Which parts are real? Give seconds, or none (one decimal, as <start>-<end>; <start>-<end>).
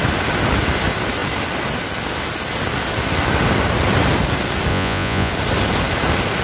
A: 0.0-4.7; 5.3-6.4